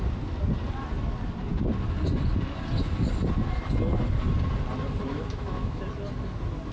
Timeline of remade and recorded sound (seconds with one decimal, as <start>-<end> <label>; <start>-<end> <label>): 0.0-5.1 recorded; 5.1-5.8 remade; 5.8-6.7 recorded

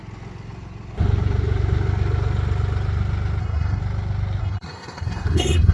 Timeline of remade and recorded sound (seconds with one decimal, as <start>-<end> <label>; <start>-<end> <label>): 0.0-3.4 recorded; 3.4-3.8 remade; 3.8-4.4 recorded; 4.4-5.7 remade